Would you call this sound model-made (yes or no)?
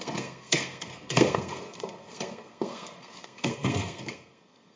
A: yes